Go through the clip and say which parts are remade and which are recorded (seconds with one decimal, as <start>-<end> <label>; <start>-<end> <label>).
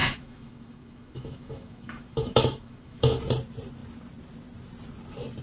0.0-3.2 remade; 3.2-5.4 recorded